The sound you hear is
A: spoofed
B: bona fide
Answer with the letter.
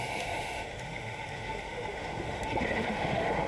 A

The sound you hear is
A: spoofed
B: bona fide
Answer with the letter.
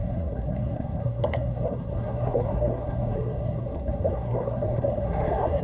A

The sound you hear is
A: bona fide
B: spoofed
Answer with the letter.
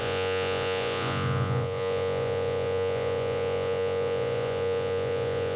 B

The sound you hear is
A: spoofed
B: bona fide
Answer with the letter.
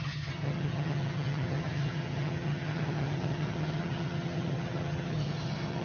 A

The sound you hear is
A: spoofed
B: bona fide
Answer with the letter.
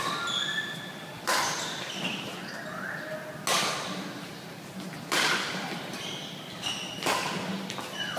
B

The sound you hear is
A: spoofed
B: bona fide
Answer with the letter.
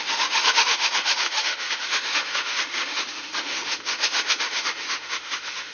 A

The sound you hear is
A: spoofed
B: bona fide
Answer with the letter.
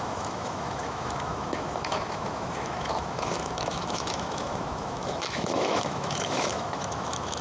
A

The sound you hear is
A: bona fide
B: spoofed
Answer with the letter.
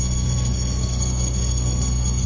B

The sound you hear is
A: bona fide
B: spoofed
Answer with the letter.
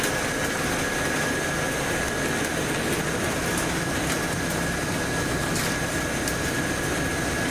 A